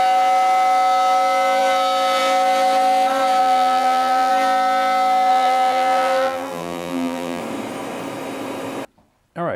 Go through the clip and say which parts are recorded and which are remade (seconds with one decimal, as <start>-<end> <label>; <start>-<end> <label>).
0.0-3.4 recorded; 3.4-4.3 remade; 4.3-5.3 recorded; 5.3-7.4 remade; 7.4-9.6 recorded